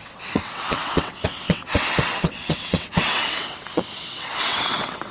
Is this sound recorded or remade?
remade